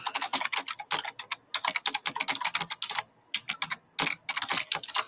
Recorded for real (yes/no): yes